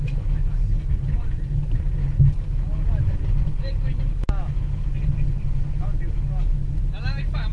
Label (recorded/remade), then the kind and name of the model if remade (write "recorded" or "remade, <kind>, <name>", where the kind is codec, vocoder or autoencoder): recorded